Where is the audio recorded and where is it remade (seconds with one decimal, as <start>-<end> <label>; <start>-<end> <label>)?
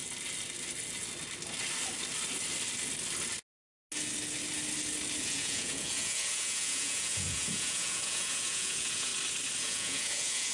0.0-5.2 recorded; 5.2-9.1 remade; 9.1-9.6 recorded; 9.6-10.5 remade